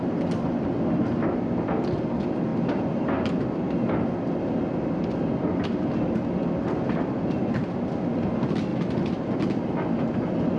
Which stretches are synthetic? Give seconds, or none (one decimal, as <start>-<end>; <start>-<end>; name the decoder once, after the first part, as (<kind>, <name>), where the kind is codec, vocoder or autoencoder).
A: none